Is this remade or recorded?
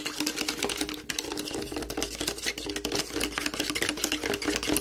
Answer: recorded